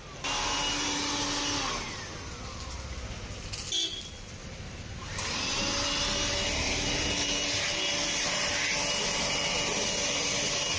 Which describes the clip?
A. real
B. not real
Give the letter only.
A